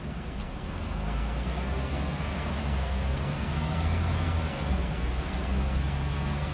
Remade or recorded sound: remade